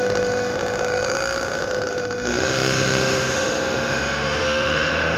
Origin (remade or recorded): remade